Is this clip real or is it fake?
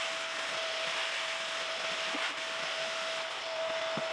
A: real